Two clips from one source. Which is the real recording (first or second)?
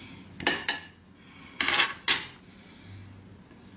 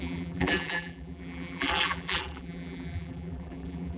first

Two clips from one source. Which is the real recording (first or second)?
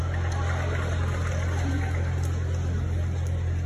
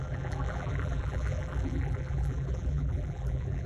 first